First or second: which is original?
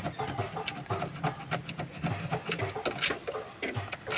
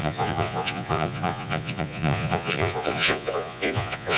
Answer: first